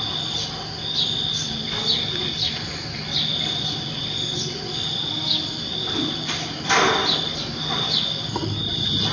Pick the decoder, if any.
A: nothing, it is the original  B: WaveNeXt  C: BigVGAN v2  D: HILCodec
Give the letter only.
A